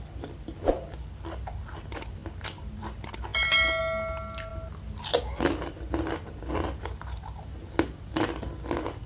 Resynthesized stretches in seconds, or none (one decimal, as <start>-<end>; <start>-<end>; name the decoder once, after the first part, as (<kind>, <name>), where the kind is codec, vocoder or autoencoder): none